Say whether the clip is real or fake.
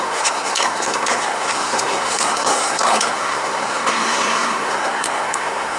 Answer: fake